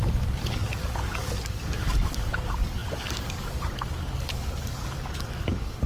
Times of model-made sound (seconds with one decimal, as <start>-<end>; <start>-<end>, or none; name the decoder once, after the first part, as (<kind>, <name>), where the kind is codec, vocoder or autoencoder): 0.0-5.9 (codec, DAC)